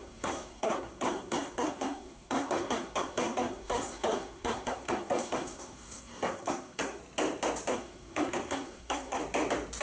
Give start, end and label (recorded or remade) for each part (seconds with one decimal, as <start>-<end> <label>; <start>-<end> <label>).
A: 0.0-7.0 remade; 7.0-7.7 recorded; 7.7-9.2 remade; 9.2-9.8 recorded